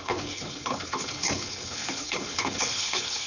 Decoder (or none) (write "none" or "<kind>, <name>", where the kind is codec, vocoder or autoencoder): codec, HILCodec